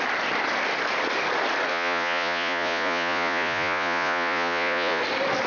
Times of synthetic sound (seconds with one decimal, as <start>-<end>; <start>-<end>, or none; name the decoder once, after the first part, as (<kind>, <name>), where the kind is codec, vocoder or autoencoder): 1.7-5.0 (vocoder, Vocos)